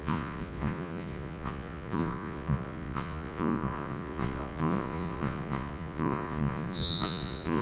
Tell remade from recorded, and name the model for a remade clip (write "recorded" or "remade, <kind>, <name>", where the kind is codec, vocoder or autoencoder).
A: remade, vocoder, Vocos